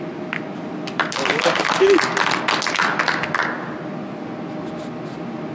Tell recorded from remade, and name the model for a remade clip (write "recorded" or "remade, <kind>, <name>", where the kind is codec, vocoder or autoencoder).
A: recorded